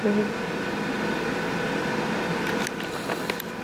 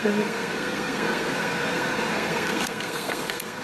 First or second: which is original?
first